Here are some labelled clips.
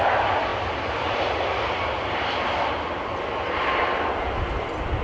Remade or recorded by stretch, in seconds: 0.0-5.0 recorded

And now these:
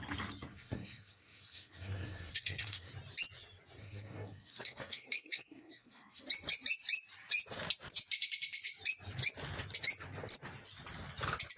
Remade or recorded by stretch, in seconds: 0.0-0.5 recorded; 0.5-2.9 remade; 2.9-3.8 recorded; 3.8-6.2 remade; 6.2-11.6 recorded

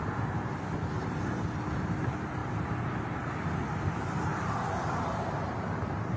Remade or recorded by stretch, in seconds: 0.0-6.2 recorded